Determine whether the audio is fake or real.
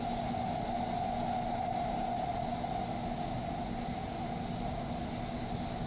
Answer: real